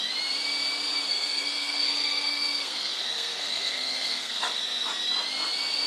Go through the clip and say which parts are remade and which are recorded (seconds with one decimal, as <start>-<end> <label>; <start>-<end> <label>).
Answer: 0.0-1.1 recorded; 1.1-4.6 remade; 4.6-5.9 recorded